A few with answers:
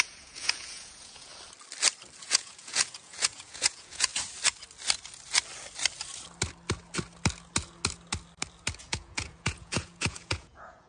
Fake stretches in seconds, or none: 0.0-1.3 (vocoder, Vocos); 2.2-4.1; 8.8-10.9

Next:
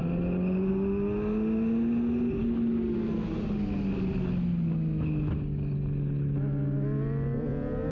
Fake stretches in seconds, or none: none